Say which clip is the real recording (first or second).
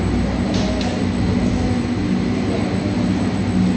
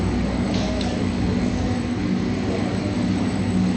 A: first